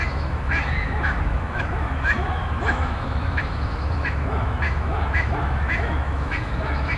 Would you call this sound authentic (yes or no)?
no